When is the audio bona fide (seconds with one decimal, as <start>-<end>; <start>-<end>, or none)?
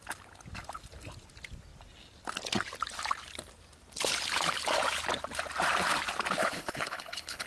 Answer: 0.0-6.4